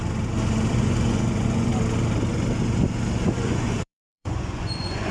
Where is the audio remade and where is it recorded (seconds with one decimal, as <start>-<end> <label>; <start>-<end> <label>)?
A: 0.0-0.7 recorded; 0.7-1.7 remade; 1.7-3.4 recorded; 3.4-5.1 remade